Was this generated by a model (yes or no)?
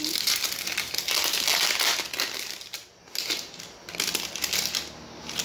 no